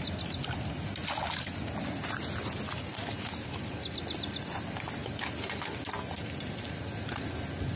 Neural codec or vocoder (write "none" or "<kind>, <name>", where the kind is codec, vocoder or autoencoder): none